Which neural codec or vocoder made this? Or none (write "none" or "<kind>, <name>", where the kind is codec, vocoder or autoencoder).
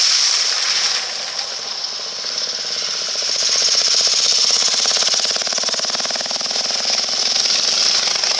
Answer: none